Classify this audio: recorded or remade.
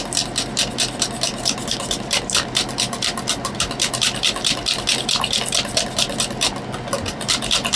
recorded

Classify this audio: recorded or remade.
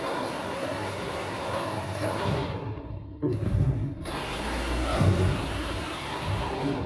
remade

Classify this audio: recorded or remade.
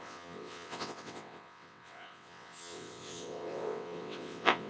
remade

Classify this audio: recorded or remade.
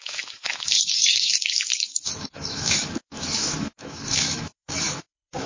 remade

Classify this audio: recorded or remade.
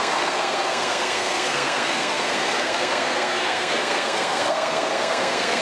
remade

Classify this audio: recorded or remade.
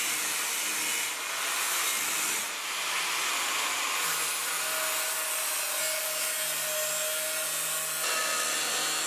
recorded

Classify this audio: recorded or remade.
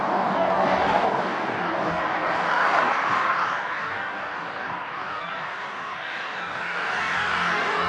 remade